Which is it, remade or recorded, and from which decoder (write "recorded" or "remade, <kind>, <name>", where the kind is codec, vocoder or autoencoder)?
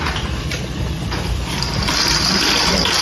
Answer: remade, vocoder, BigVGAN v2